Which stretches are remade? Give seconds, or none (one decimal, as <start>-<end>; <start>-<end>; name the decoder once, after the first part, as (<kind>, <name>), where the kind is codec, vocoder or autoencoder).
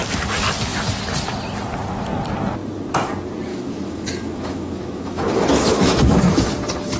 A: 3.5-6.4 (autoencoder, DAC-VAE)